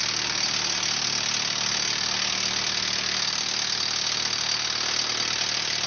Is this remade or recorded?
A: recorded